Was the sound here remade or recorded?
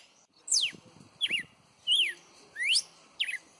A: recorded